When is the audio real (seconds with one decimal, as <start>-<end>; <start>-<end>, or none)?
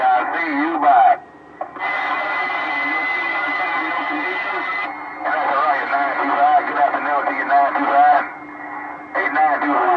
0.0-0.7; 5.7-10.0